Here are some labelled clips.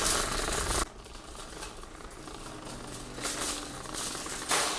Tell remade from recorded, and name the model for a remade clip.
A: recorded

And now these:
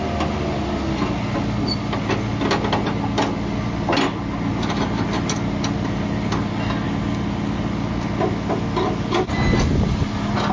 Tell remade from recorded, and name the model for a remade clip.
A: recorded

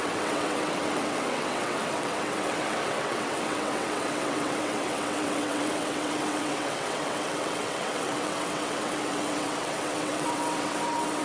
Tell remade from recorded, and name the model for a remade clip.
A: remade, vocoder, WaveNeXt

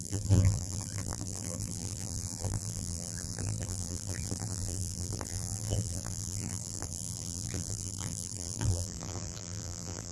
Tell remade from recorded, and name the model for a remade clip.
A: remade, vocoder, BigVGAN v2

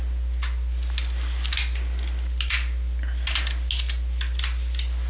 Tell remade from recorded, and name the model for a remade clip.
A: recorded